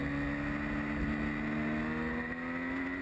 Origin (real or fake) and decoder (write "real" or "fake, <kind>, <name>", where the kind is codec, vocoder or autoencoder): real